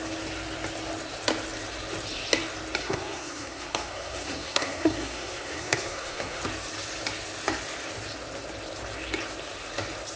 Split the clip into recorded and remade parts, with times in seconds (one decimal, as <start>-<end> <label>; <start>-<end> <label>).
0.0-2.8 recorded; 2.8-6.4 remade; 6.4-10.2 recorded

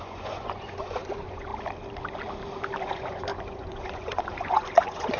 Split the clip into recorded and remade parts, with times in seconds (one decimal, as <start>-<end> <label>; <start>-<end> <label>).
0.0-1.5 remade; 1.5-2.8 recorded; 2.8-5.2 remade

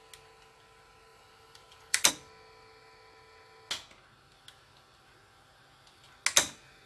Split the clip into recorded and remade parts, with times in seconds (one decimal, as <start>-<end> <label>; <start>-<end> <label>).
0.0-1.1 recorded; 1.1-2.1 remade; 2.1-6.9 recorded

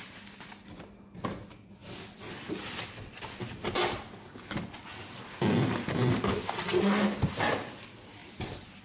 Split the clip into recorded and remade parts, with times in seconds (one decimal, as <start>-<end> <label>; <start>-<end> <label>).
0.0-8.2 recorded; 8.2-8.8 remade

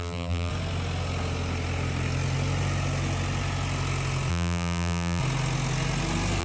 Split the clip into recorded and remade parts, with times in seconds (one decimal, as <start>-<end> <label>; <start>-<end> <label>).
0.0-0.5 remade; 0.5-4.3 recorded; 4.3-5.2 remade; 5.2-6.4 recorded